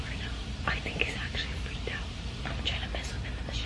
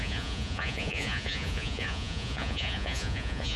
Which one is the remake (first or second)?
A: second